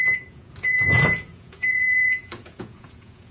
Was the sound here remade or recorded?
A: remade